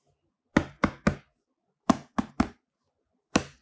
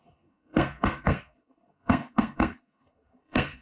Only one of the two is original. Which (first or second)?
first